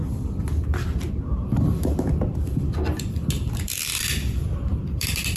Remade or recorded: remade